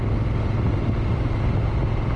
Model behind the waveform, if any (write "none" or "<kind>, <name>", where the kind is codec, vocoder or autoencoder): none